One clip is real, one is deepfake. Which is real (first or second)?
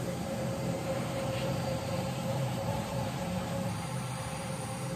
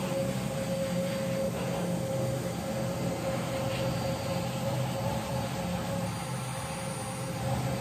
second